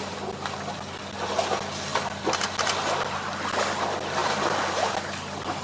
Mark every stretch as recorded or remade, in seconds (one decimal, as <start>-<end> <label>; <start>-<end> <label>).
0.0-4.2 recorded; 4.2-4.9 remade; 4.9-5.6 recorded